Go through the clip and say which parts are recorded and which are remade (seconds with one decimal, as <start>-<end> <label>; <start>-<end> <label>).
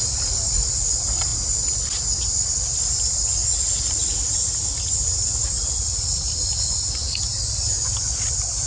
0.0-8.7 recorded